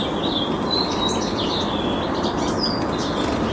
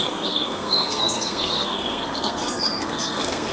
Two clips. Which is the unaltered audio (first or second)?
first